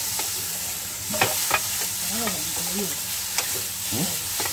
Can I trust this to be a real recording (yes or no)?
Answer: yes